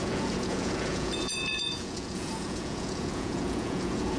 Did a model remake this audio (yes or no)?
yes